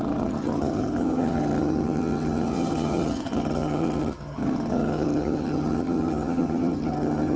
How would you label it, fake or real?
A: fake